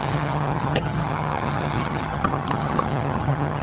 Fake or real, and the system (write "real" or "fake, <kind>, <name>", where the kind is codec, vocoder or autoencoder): fake, vocoder, HiFi-GAN